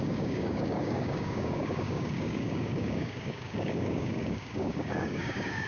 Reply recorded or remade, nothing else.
remade